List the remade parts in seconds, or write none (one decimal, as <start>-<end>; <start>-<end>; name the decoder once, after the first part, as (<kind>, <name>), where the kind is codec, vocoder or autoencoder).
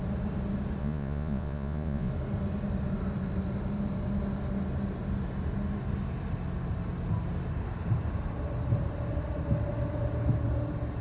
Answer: 0.8-2.1 (vocoder, Vocos)